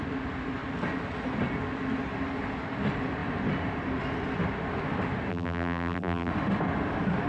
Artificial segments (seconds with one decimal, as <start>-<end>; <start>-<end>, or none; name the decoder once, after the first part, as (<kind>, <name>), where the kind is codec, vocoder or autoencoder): 5.3-6.3 (vocoder, BigVGAN v2)